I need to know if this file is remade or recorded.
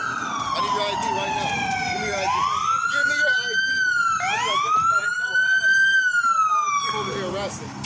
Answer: recorded